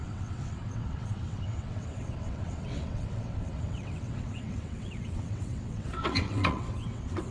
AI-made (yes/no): yes